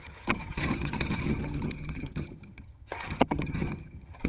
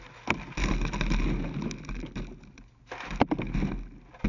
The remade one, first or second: first